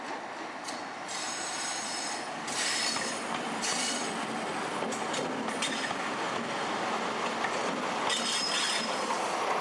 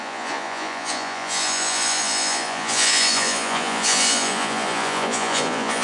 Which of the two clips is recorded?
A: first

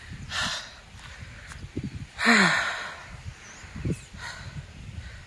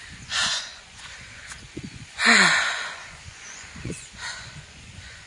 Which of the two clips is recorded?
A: first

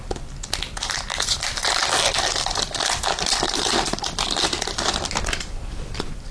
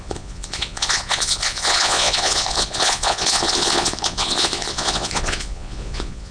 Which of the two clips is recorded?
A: first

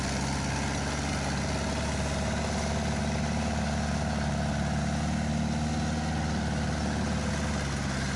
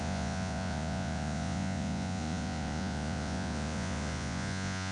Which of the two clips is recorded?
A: first